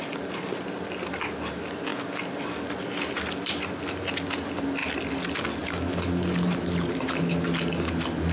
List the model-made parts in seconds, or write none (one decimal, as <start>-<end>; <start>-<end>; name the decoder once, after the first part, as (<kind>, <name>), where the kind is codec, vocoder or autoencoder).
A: none